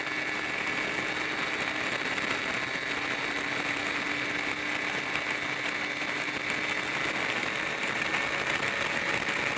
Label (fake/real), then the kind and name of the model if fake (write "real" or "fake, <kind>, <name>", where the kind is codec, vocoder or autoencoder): real